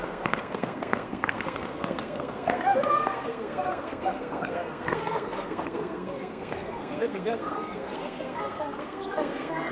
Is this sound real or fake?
fake